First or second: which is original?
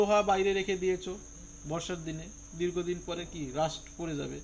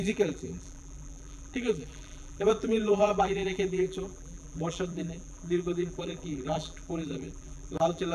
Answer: first